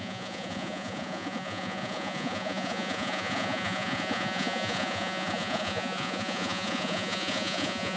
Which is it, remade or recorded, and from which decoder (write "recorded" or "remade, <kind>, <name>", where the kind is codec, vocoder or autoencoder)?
remade, vocoder, Vocos